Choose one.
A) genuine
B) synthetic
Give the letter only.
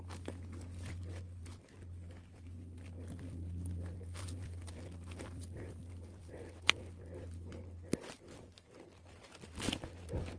A